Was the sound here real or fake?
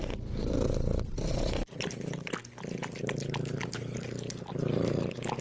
real